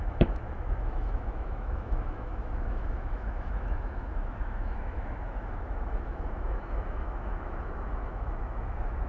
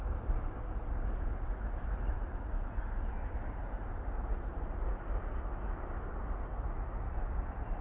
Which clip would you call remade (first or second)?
first